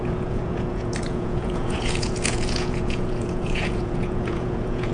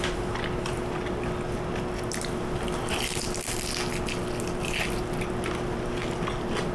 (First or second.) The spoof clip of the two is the first